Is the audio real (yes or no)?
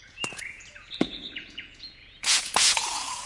no